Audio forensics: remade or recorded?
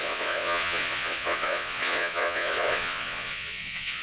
remade